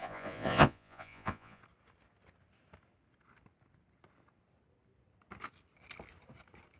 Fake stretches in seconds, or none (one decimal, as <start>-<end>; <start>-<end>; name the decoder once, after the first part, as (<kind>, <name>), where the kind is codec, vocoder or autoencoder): 0.0-1.6 (vocoder, Vocos)